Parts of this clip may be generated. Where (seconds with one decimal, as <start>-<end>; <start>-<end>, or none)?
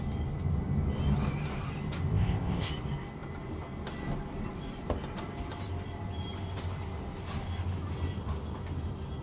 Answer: 2.1-2.7